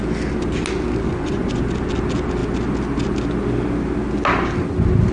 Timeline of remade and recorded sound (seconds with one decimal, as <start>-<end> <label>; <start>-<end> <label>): 0.0-1.1 recorded; 1.1-1.6 remade; 1.6-5.1 recorded